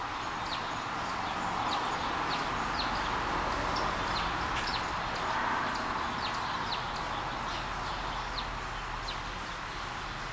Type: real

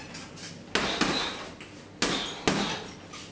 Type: real